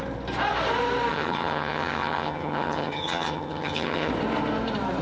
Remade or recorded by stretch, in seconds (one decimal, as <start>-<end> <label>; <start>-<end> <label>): 0.0-1.1 recorded; 1.1-4.1 remade; 4.1-5.0 recorded